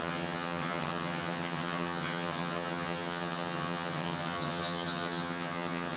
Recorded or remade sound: remade